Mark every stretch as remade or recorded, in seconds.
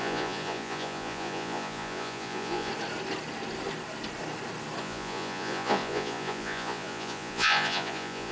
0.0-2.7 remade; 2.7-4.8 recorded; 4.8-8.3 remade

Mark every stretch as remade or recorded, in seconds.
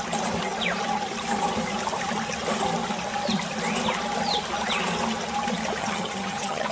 0.0-5.8 recorded; 5.8-6.7 remade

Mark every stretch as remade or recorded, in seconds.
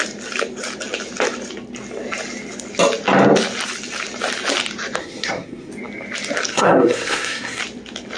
0.0-5.0 recorded; 5.0-5.7 remade; 5.7-6.5 recorded; 6.5-7.6 remade; 7.6-8.2 recorded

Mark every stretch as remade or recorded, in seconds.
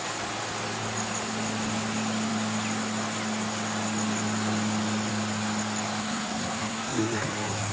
0.0-6.0 recorded; 6.0-7.7 remade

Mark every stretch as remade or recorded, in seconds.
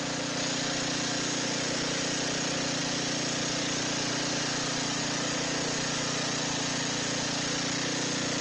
0.0-8.4 recorded